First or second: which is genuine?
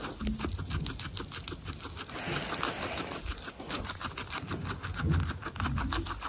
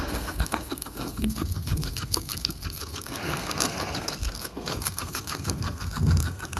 first